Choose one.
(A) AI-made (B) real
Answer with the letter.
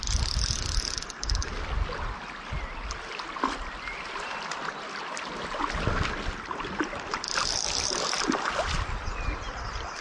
B